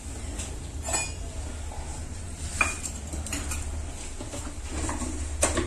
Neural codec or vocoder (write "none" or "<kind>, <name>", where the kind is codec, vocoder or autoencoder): none